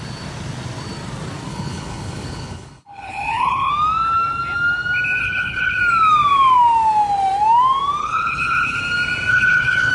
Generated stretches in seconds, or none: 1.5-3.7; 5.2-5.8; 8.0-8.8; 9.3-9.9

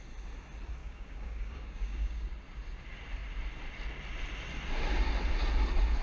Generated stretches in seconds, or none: 0.8-2.4

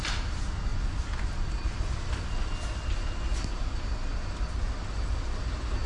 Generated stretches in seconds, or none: none

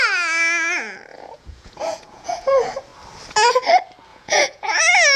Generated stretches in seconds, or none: 1.1-2.5; 4.1-4.8

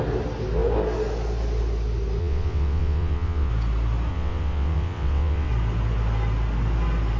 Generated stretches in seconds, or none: 2.2-3.5; 4.1-5.5

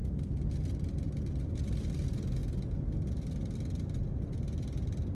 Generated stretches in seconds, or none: none

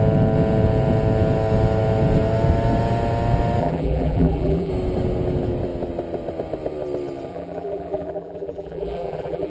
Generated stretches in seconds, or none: 3.6-4.7; 7.3-9.5

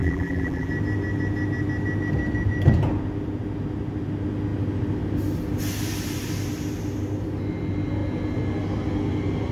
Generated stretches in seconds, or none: 0.0-0.7